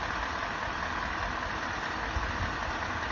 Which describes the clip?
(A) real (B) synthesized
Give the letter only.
A